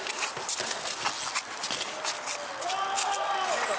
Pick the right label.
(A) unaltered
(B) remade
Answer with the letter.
A